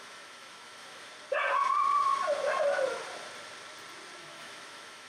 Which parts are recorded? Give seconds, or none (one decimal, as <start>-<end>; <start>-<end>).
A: 1.1-4.2